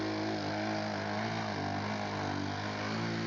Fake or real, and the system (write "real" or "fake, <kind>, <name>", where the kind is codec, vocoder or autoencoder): real